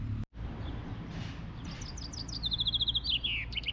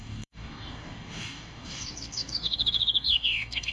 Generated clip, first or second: second